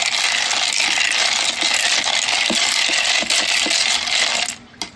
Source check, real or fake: real